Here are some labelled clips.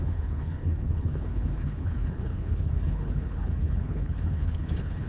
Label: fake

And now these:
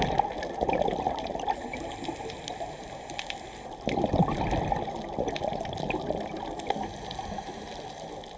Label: real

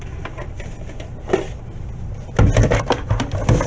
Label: real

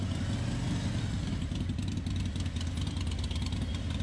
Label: real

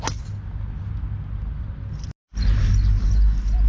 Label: real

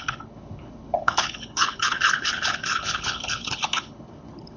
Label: fake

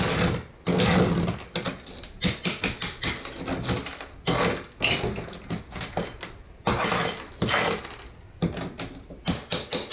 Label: real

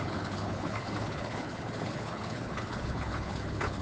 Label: fake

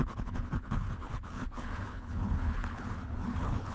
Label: fake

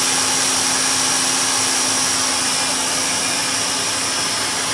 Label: real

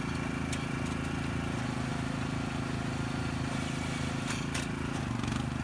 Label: real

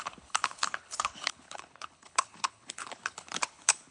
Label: fake